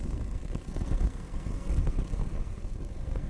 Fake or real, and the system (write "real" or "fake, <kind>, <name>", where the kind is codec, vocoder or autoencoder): fake, codec, SNAC